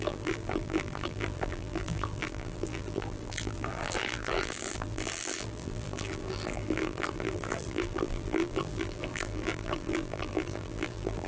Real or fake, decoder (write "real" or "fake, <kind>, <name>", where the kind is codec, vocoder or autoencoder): fake, vocoder, BigVGAN v2